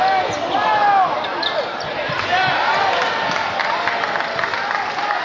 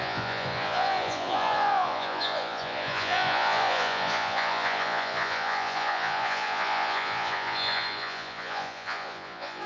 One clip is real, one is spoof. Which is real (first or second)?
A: first